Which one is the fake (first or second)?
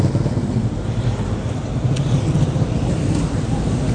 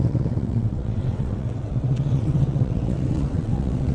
second